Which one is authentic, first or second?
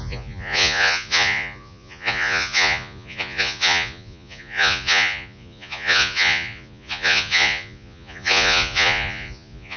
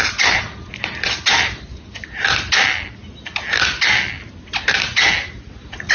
second